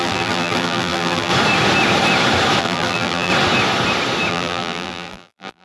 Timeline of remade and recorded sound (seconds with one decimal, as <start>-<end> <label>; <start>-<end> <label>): 0.0-1.3 remade; 1.3-2.6 recorded; 2.6-3.3 remade; 3.3-4.3 recorded; 4.3-5.6 remade

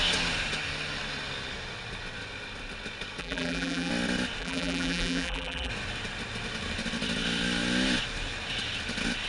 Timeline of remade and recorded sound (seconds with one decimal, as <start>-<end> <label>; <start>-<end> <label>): 0.0-3.2 recorded; 3.2-3.9 remade; 3.9-4.4 recorded; 4.4-5.7 remade; 5.7-9.3 recorded

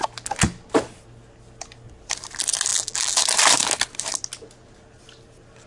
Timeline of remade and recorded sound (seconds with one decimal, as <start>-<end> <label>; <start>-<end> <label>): 0.0-2.7 recorded; 2.7-3.2 remade; 3.2-5.7 recorded

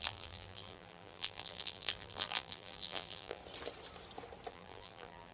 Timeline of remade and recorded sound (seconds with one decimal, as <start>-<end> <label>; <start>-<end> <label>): 0.0-3.4 remade; 3.4-4.5 recorded; 4.5-5.3 remade

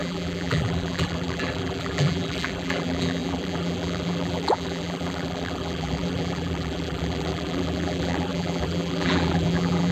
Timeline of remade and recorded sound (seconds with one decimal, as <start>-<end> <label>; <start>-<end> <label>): 0.0-9.9 remade